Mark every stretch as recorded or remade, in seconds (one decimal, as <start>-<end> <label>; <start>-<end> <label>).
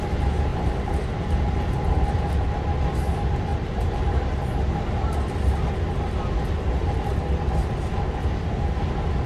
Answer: 0.0-0.5 recorded; 0.5-1.5 remade; 1.5-3.5 recorded; 3.5-4.2 remade; 4.2-9.3 recorded